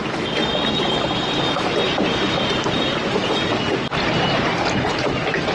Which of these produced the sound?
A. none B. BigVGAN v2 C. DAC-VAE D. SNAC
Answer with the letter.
A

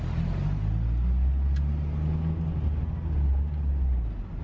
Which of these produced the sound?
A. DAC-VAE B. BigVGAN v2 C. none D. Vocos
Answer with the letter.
C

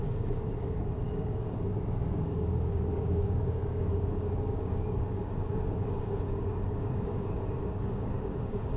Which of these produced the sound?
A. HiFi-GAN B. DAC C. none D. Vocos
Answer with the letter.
B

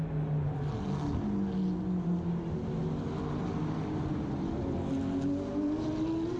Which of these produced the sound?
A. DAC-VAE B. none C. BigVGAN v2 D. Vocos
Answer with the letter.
B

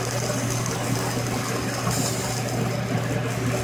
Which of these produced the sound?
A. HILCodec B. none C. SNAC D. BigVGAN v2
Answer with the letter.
D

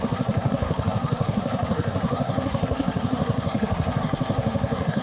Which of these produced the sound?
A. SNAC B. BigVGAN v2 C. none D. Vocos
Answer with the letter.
A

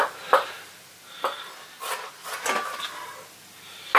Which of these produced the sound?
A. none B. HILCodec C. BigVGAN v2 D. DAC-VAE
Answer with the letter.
A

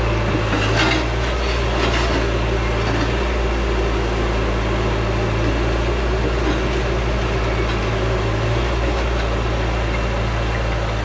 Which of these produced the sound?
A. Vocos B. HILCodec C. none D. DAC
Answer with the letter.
C